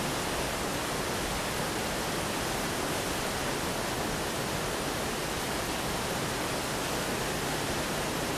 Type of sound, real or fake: real